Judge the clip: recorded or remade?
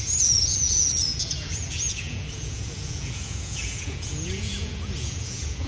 remade